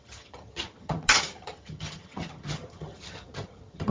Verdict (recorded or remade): remade